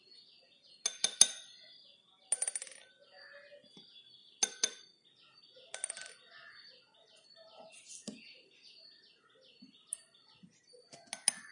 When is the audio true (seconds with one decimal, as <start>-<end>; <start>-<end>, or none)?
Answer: 0.0-11.5